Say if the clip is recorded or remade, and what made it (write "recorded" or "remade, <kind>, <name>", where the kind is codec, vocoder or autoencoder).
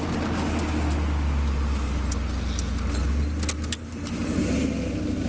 recorded